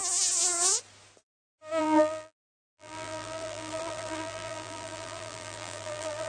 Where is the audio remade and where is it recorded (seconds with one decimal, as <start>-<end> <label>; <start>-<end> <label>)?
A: 0.0-1.8 recorded; 1.8-6.3 remade